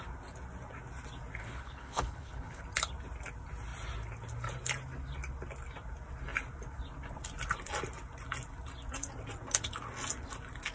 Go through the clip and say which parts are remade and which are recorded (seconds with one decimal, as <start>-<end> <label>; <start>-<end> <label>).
0.0-1.4 recorded; 1.4-2.6 remade; 2.6-10.7 recorded